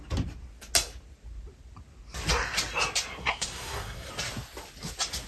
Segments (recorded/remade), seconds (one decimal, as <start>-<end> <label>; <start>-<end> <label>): 0.0-3.2 recorded; 3.2-4.1 remade; 4.1-5.3 recorded